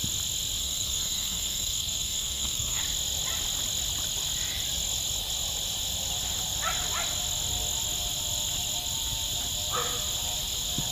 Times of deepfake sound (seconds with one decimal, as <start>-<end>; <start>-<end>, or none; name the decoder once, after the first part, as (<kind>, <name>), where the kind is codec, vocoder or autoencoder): 0.6-2.8 (codec, SNAC)